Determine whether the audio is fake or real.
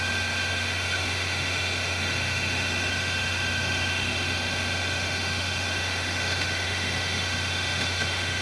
fake